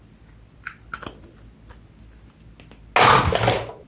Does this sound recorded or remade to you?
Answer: recorded